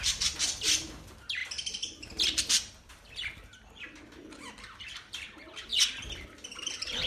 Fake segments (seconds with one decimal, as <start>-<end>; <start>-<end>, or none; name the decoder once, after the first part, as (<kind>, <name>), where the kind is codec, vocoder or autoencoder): 0.0-7.1 (vocoder, BigVGAN v2)